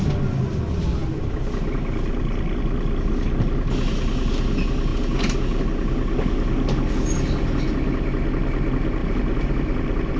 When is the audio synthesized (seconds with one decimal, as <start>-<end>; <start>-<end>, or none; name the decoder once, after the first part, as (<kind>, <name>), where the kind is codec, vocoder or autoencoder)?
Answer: 9.0-10.2 (vocoder, BigVGAN v2)